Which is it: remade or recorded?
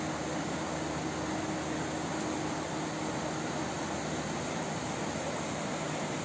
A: recorded